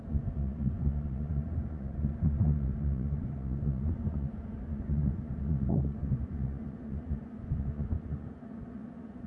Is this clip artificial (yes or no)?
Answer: yes